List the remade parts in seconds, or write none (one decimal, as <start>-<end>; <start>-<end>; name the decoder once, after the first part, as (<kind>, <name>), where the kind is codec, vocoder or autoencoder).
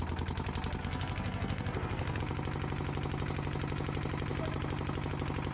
0.8-2.2 (codec, SNAC)